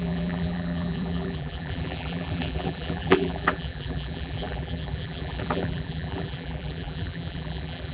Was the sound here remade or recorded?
remade